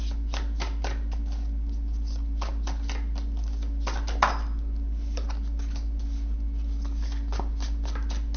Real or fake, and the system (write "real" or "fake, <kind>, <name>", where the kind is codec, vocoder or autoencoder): real